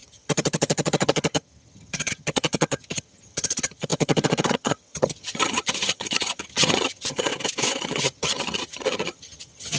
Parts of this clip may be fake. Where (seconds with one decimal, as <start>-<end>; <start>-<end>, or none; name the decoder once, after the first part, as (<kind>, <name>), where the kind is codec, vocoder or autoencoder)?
0.0-7.3 (vocoder, HiFi-GAN); 7.8-9.8

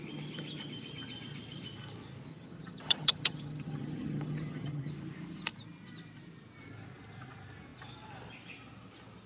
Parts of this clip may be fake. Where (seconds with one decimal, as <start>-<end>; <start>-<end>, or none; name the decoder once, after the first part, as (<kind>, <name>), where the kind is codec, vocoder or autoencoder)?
2.3-4.9 (vocoder, HiFi-GAN)

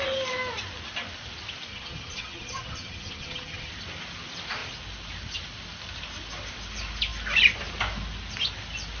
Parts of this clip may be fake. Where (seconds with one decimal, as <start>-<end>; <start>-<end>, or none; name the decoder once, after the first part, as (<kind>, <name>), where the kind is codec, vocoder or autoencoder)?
1.7-3.7 (vocoder, HiFi-GAN)

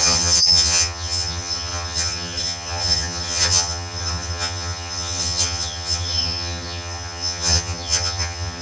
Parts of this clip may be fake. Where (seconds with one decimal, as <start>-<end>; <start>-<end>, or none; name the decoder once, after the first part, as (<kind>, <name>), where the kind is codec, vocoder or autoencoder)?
0.0-8.6 (vocoder, HiFi-GAN)

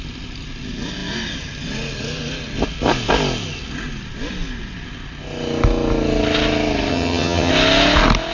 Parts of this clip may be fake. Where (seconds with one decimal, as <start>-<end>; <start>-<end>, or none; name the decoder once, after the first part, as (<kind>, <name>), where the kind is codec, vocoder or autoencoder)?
6.9-7.5 (vocoder, HiFi-GAN)